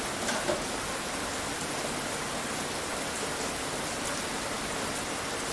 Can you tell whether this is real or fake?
real